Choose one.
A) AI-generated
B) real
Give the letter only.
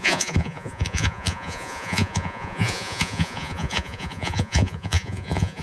A